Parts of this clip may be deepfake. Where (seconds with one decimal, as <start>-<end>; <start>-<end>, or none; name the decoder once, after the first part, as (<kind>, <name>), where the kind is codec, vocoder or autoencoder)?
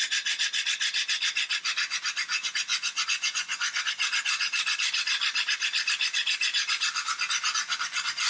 2.7-3.8 (vocoder, Vocos)